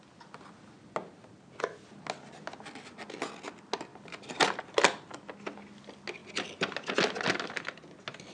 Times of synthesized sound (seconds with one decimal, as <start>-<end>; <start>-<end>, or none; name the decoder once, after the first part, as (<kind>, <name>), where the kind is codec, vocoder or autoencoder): 3.9-4.6 (vocoder, BigVGAN v2)